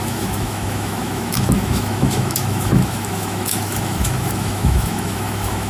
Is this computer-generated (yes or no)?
yes